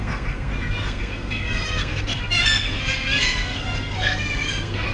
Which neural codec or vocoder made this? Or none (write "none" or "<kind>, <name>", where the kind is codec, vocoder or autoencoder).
codec, SNAC